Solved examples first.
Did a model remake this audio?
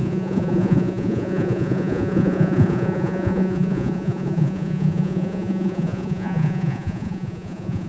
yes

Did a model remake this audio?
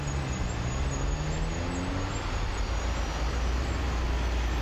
no